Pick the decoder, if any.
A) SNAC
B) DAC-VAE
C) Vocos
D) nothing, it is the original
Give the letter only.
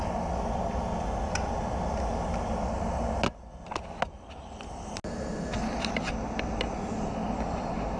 D